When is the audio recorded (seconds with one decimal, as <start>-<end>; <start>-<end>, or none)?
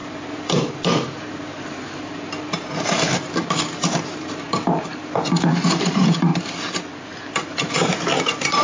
none